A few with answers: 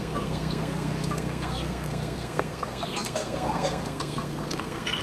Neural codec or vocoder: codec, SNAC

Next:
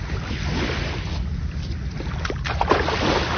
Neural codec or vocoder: none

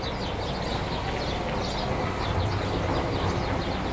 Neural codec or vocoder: none